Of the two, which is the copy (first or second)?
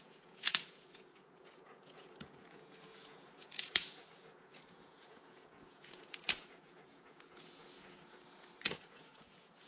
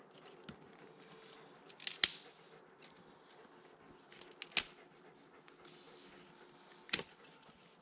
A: first